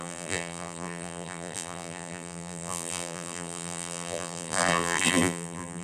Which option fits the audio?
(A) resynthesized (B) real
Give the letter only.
A